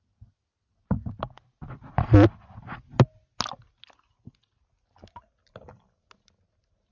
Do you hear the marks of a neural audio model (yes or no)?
no